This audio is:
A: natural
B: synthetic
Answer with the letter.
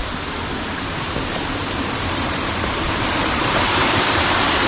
B